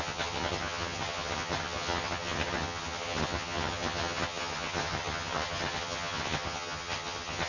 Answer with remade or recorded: remade